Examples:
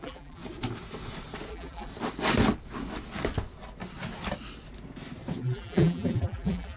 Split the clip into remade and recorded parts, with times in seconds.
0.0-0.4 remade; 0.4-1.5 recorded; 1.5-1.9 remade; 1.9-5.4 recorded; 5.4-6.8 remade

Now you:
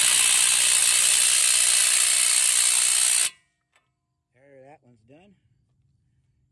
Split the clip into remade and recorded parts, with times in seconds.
0.0-0.8 recorded; 0.8-1.4 remade; 1.4-1.8 recorded; 1.8-2.4 remade; 2.4-6.5 recorded

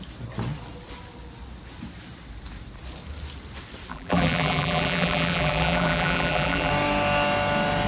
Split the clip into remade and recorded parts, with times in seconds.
0.0-3.9 recorded; 3.9-6.7 remade; 6.7-7.9 recorded

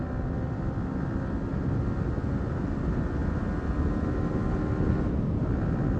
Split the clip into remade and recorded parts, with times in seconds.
0.0-6.0 recorded

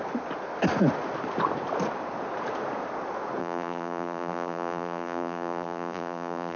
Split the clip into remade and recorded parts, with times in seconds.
0.0-3.4 recorded; 3.4-6.6 remade

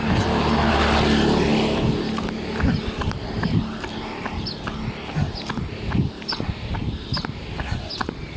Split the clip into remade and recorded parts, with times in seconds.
0.0-1.5 recorded; 1.5-6.0 remade; 6.0-8.4 recorded

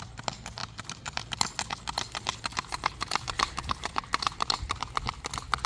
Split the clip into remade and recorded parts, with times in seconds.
0.0-0.6 recorded; 0.6-1.2 remade; 1.2-2.5 recorded; 2.5-4.9 remade; 4.9-5.7 recorded